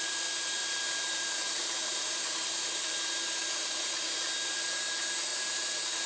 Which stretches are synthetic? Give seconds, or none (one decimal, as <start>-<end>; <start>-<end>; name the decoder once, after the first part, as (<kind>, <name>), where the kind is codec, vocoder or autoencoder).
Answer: 0.0-6.1 (vocoder, BigVGAN v2)